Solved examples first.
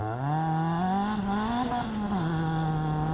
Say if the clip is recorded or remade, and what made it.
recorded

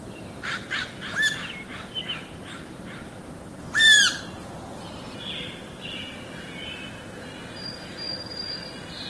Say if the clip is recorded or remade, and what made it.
recorded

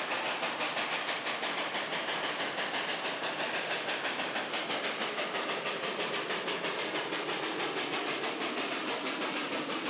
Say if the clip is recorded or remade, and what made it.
recorded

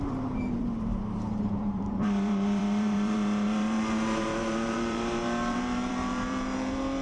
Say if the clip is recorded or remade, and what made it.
remade, vocoder, BigVGAN v2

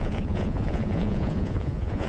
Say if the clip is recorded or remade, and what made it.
remade, vocoder, Vocos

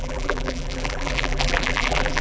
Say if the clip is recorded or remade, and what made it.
remade, vocoder, BigVGAN v2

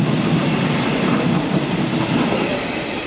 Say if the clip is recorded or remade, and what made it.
recorded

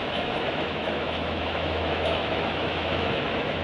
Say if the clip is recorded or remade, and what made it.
remade, autoencoder, DAC-VAE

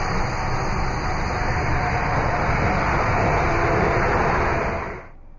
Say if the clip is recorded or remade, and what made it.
recorded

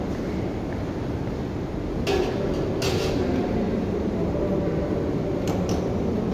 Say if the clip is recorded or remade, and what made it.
recorded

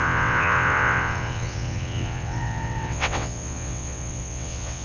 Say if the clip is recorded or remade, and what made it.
remade, vocoder, WaveNeXt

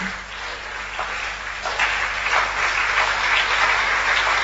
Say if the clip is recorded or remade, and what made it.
recorded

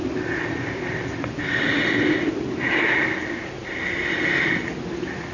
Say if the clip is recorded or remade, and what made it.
recorded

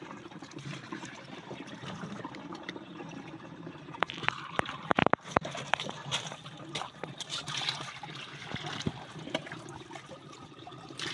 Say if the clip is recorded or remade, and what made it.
remade, vocoder, BigVGAN v2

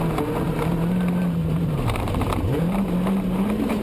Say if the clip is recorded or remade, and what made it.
remade, vocoder, BigVGAN v2